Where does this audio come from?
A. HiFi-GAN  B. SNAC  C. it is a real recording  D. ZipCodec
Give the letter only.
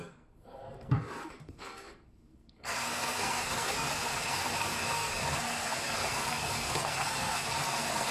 B